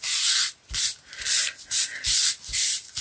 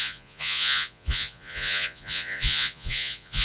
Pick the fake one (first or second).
second